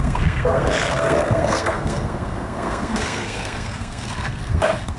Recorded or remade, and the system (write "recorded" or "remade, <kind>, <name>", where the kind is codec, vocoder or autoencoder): remade, codec, SNAC